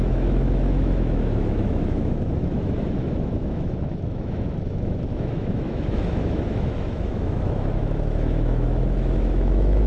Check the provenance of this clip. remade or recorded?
remade